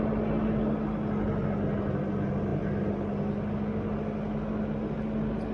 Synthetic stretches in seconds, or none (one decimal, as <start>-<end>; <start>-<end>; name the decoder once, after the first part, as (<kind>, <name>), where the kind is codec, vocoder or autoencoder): none